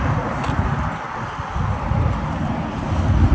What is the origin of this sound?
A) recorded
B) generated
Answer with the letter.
B